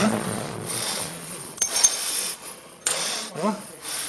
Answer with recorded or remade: remade